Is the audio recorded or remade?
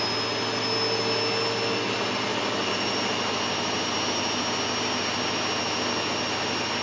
recorded